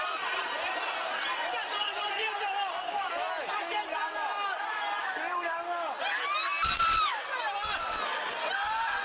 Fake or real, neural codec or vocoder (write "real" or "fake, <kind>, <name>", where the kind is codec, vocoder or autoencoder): real